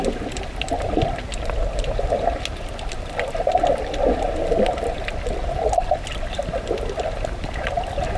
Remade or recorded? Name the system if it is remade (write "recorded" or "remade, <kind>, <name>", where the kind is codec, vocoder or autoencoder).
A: recorded